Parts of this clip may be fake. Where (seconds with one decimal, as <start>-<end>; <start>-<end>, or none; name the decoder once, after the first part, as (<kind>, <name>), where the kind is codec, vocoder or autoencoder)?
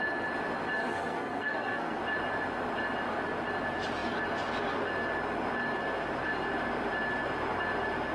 0.8-2.0 (codec, SNAC)